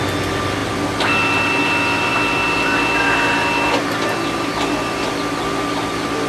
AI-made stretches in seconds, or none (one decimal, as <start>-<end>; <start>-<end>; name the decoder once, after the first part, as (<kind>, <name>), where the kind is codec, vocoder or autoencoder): none